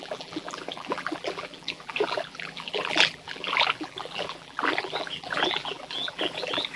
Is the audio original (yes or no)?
no